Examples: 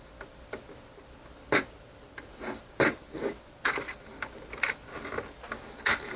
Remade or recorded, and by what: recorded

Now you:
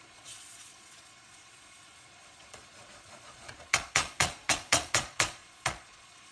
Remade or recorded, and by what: remade, vocoder, Vocos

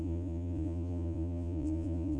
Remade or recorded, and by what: remade, vocoder, Vocos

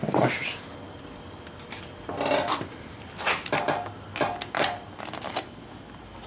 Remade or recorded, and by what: recorded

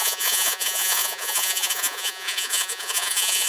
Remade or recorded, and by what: remade, vocoder, Vocos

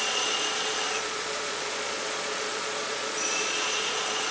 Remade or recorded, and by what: remade, vocoder, Vocos